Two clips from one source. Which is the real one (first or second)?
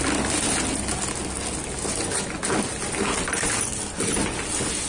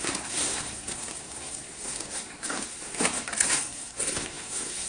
first